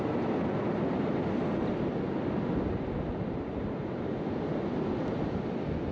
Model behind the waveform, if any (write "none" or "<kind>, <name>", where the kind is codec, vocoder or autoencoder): none